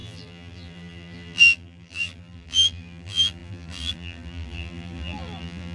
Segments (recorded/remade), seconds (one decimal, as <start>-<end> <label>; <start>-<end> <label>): 0.0-5.7 remade